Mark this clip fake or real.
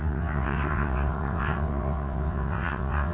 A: fake